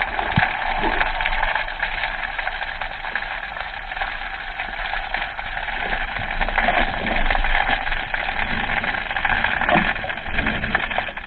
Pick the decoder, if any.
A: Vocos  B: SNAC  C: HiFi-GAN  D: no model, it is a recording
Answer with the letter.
D